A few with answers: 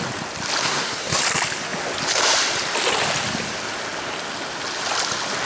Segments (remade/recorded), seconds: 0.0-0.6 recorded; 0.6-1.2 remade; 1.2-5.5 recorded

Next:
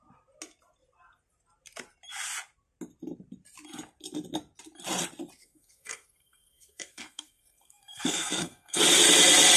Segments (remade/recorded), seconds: 0.0-5.4 recorded; 5.4-8.8 remade; 8.8-9.6 recorded

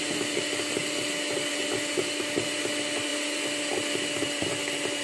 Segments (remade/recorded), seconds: 0.0-5.0 recorded

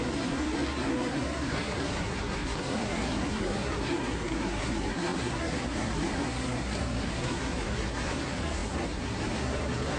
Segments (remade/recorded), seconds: 0.0-10.0 remade